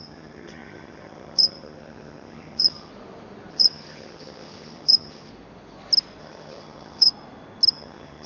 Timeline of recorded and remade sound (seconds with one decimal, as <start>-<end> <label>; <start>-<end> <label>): 0.0-2.9 remade; 2.9-3.5 recorded; 3.5-5.3 remade; 5.3-6.2 recorded; 6.2-7.1 remade; 7.1-7.7 recorded; 7.7-8.3 remade